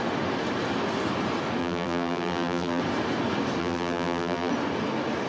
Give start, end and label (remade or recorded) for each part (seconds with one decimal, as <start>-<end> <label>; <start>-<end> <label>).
0.0-1.6 recorded; 1.6-2.8 remade; 2.8-3.6 recorded; 3.6-4.5 remade; 4.5-5.3 recorded